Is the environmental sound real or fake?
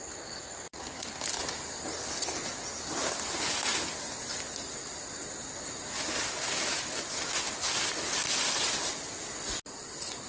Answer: real